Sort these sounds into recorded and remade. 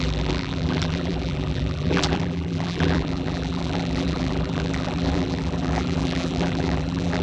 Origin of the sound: remade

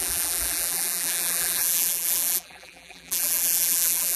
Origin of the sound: remade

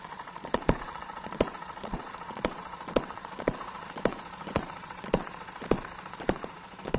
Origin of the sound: remade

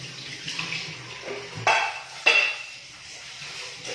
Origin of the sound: recorded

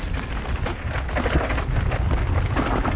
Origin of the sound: recorded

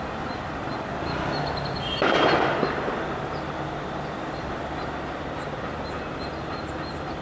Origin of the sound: recorded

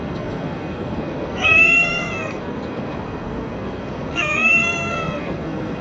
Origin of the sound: remade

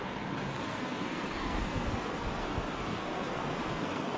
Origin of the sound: remade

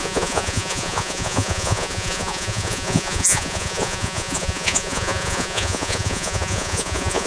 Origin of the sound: remade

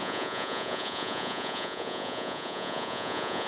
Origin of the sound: remade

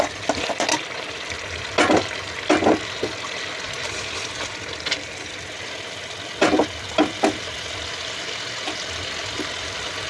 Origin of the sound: recorded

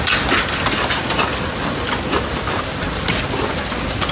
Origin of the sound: recorded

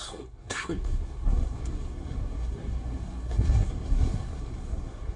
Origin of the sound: remade